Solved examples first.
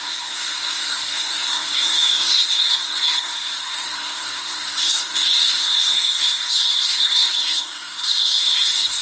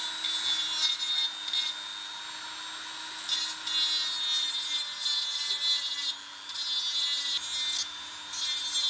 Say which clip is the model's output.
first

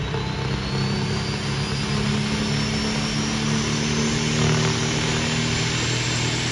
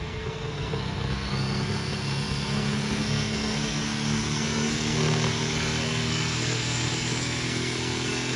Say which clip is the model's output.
second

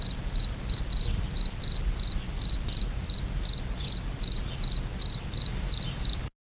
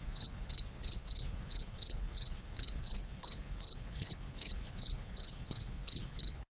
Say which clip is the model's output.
second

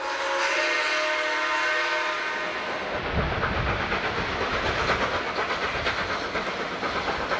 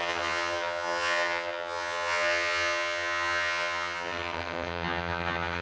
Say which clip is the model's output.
second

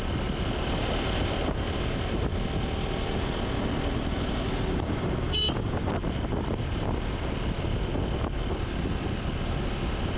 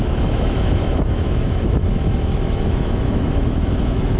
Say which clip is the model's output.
second